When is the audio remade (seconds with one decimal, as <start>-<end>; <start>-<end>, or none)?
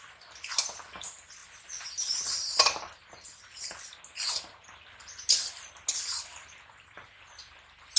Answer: none